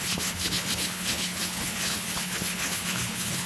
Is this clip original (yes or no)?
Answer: no